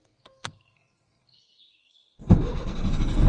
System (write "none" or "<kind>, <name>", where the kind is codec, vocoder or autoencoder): codec, SNAC